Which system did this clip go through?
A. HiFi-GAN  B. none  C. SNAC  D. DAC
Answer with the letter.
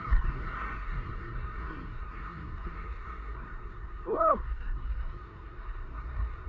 C